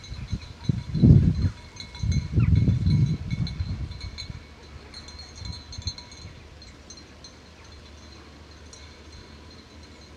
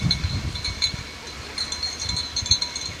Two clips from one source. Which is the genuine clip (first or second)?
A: first